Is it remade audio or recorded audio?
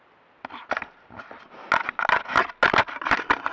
recorded